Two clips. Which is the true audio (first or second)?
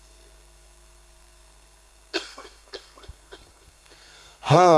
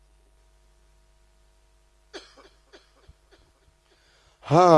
second